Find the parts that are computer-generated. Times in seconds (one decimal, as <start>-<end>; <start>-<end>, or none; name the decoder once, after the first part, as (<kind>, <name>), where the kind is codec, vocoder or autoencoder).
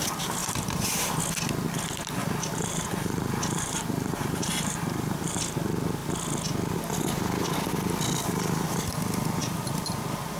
0.4-1.2 (vocoder, BigVGAN v2); 2.2-5.4; 9.4-10.0